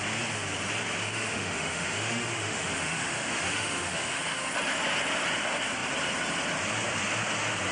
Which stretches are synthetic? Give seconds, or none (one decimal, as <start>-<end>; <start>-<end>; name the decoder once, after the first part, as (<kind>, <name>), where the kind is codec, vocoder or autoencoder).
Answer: 1.0-4.5 (autoencoder, DAC-VAE)